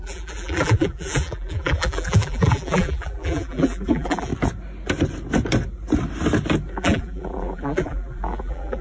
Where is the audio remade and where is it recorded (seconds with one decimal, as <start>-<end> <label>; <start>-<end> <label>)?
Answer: 0.0-4.3 remade; 4.3-6.7 recorded; 6.7-8.8 remade